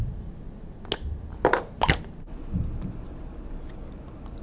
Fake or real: real